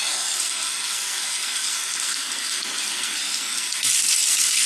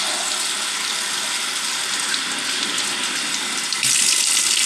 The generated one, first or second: first